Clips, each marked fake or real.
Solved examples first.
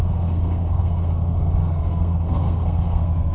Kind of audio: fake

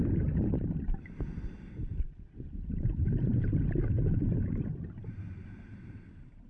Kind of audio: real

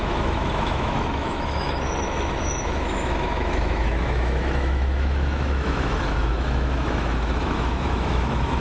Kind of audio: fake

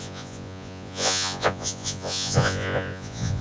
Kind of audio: fake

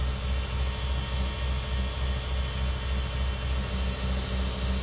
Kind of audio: real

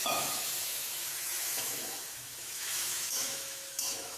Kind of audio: fake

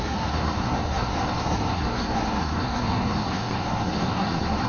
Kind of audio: fake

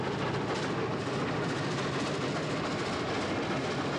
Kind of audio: real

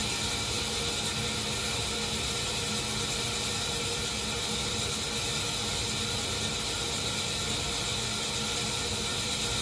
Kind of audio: real